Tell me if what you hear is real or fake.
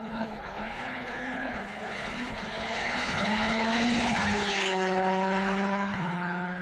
fake